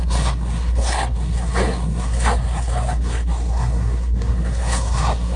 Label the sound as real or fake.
fake